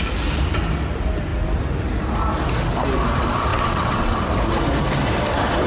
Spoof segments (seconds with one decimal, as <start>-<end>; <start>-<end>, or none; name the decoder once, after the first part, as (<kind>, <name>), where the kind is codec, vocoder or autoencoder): 3.5-4.2 (vocoder, WaveNeXt)